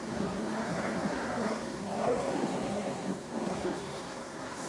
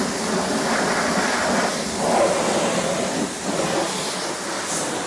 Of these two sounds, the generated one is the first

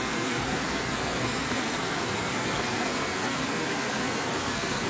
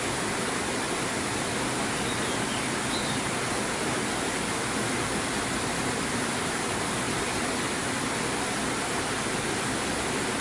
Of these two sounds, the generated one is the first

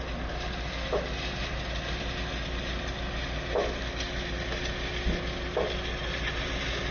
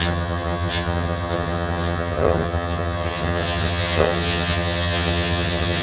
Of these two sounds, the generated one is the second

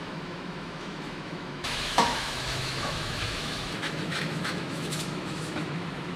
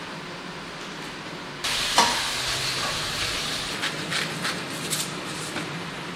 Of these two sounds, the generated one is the first